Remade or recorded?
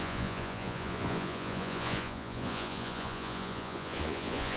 remade